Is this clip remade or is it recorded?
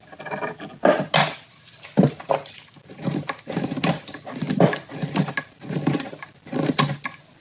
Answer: recorded